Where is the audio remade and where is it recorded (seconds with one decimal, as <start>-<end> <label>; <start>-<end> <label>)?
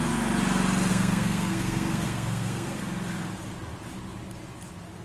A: 0.0-0.9 recorded; 0.9-2.8 remade; 2.8-5.0 recorded